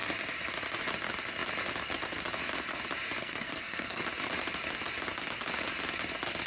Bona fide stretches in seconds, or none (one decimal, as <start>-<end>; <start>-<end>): 0.0-3.2; 4.0-6.5